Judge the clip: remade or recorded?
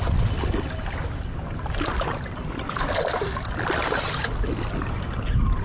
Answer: recorded